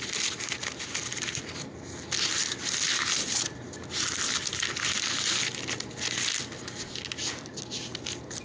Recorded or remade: recorded